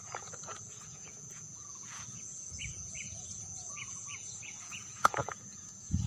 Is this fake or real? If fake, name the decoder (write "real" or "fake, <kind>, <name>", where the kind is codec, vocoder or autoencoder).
fake, vocoder, Vocos